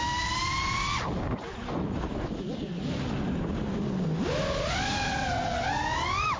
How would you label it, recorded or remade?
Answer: recorded